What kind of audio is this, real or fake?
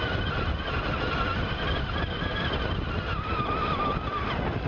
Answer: real